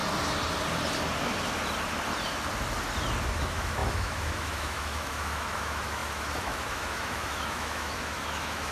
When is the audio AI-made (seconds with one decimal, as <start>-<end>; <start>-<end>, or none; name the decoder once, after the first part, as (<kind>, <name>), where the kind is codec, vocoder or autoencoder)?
3.4-8.7 (autoencoder, DAC-VAE)